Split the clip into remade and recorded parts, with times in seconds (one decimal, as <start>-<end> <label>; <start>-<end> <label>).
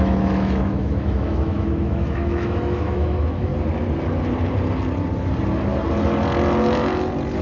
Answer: 0.0-3.5 remade; 3.5-7.4 recorded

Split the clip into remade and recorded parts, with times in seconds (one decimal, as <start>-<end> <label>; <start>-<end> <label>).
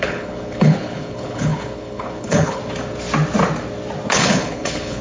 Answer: 0.0-2.6 remade; 2.6-4.1 recorded; 4.1-5.0 remade